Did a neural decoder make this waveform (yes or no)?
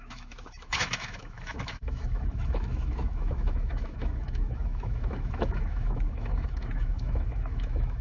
yes